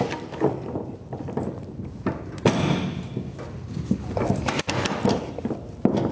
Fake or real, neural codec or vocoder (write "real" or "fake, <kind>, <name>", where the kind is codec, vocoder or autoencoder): real